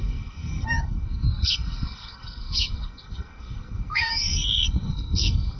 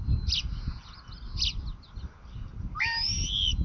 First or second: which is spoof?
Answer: first